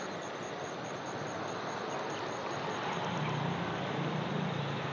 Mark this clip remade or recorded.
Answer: recorded